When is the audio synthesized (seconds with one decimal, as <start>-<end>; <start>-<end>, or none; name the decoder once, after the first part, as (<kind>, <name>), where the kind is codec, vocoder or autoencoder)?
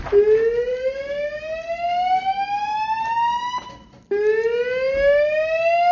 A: none